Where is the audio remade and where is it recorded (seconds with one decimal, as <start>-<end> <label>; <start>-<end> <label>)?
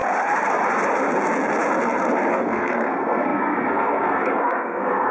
0.0-2.3 recorded; 2.3-5.1 remade